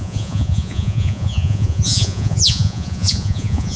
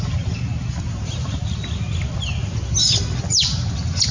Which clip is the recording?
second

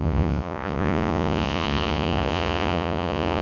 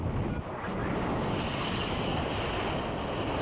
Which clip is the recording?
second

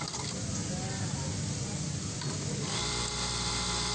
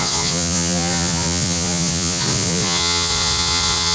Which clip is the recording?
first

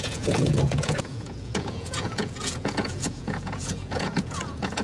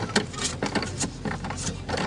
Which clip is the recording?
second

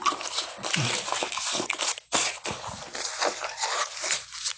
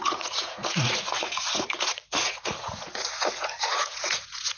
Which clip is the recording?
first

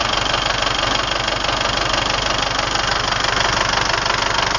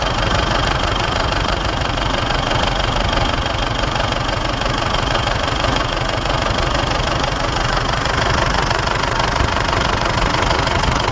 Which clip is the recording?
first